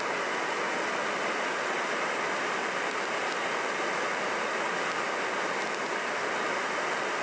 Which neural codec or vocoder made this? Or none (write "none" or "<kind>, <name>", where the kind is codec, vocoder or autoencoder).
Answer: none